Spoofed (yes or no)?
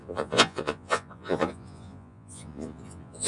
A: yes